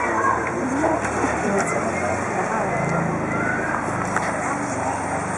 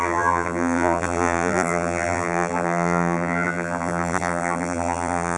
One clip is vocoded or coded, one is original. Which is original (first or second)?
first